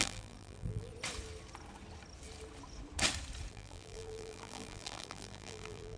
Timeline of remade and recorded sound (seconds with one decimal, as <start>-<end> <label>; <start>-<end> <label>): 0.0-0.9 remade; 0.9-3.5 recorded; 3.5-6.0 remade